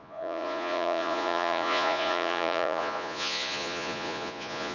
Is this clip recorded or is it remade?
remade